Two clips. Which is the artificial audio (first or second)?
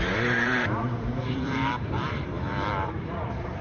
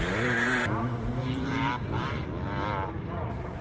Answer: first